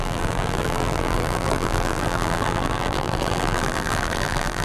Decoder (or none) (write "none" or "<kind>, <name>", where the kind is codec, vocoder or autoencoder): vocoder, BigVGAN v2